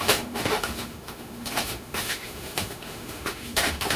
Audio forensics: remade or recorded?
remade